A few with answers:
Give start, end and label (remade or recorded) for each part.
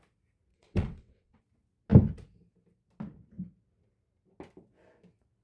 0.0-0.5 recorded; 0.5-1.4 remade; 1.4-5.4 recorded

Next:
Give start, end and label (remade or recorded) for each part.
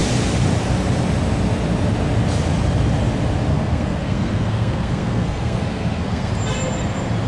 0.0-3.5 recorded; 3.5-6.3 remade; 6.3-7.3 recorded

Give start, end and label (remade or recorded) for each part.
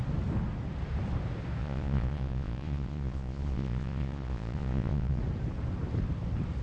0.0-1.6 recorded; 1.6-5.2 remade; 5.2-6.6 recorded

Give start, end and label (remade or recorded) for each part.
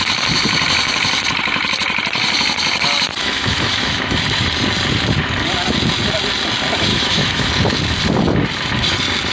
0.0-3.2 recorded; 3.2-4.2 remade; 4.2-6.9 recorded; 6.9-7.5 remade; 7.5-9.3 recorded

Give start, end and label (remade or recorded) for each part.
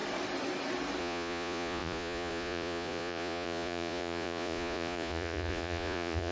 0.0-1.0 recorded; 1.0-6.3 remade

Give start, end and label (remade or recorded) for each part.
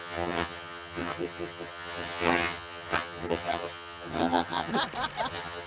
0.0-4.7 remade; 4.7-5.3 recorded; 5.3-5.7 remade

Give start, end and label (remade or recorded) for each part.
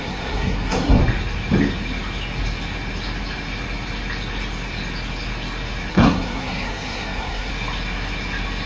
0.0-1.0 remade; 1.0-5.9 recorded; 5.9-7.5 remade; 7.5-8.7 recorded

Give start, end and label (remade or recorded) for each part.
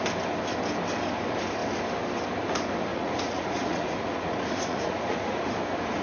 0.0-2.9 recorded; 2.9-5.5 remade; 5.5-6.0 recorded